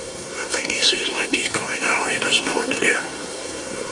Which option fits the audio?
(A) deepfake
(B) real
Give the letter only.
A